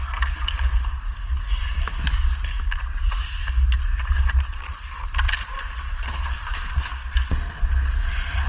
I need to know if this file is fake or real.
real